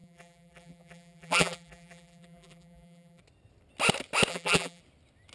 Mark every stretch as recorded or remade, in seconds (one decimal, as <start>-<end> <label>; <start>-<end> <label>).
0.0-3.2 remade; 3.2-4.3 recorded; 4.3-4.8 remade; 4.8-5.3 recorded